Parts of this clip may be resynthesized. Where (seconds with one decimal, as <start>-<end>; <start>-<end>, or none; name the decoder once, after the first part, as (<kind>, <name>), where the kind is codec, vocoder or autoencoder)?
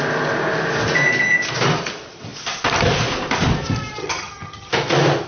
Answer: 4.0-4.7 (vocoder, HiFi-GAN)